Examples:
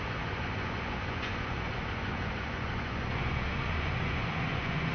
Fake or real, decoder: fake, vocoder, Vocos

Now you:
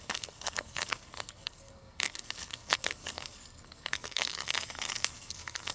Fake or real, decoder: fake, codec, SNAC